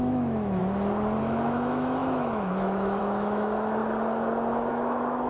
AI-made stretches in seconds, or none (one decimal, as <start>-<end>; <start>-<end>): 0.0-0.6; 1.2-3.8; 4.7-5.3